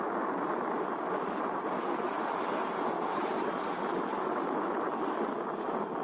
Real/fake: real